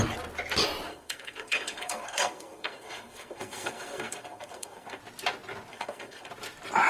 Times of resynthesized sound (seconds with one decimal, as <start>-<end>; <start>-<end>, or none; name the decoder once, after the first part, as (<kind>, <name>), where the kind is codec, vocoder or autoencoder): 0.9-5.0 (codec, SNAC); 5.7-6.3